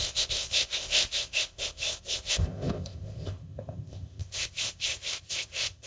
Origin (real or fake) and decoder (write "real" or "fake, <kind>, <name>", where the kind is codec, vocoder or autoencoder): fake, codec, ZipCodec